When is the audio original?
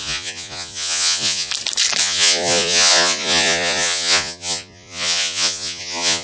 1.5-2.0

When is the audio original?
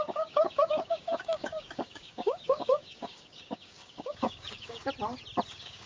4.8-5.5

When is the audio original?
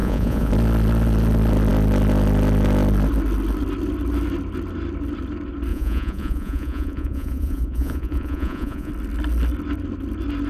0.5-5.7; 8.9-10.5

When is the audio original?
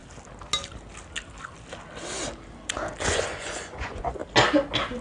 0.0-3.0; 4.2-5.0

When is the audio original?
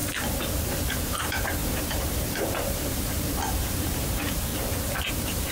0.0-0.9; 4.5-5.1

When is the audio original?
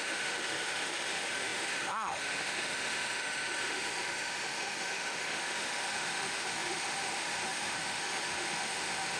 none